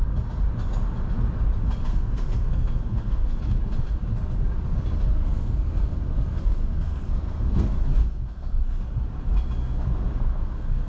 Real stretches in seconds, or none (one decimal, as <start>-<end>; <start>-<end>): 0.0-1.9; 3.3-5.2; 8.8-9.6